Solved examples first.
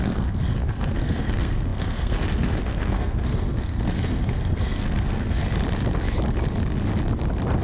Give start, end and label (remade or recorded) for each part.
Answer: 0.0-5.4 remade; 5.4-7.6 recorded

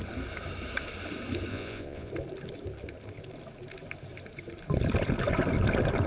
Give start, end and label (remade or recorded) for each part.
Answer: 0.0-1.5 recorded; 1.5-2.1 remade; 2.1-6.1 recorded

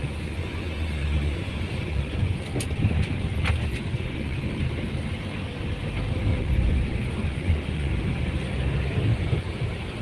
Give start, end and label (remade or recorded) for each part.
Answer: 0.0-2.4 remade; 2.4-3.7 recorded; 3.7-4.4 remade; 4.4-6.3 recorded; 6.3-7.9 remade; 7.9-9.1 recorded; 9.1-9.6 remade; 9.6-10.0 recorded

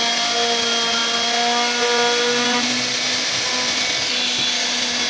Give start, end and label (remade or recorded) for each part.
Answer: 0.0-5.1 recorded

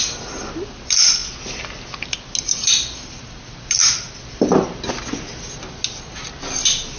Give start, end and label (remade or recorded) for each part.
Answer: 0.0-7.0 recorded

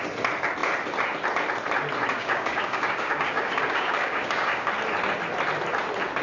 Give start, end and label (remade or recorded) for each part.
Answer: 0.0-2.1 recorded; 2.1-4.7 remade; 4.7-6.2 recorded

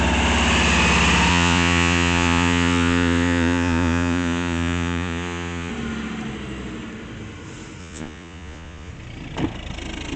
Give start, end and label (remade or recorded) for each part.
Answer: 0.0-1.3 recorded; 1.3-5.7 remade; 5.7-7.8 recorded; 7.8-8.9 remade; 8.9-10.2 recorded